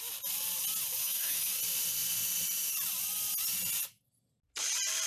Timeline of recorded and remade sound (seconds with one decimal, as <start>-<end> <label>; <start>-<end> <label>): 0.0-1.0 recorded; 1.0-1.5 remade; 1.5-5.1 recorded